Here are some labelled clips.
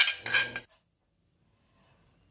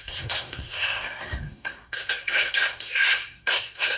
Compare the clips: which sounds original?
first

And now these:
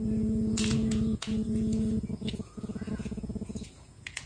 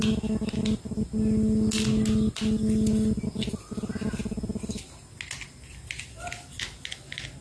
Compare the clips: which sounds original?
second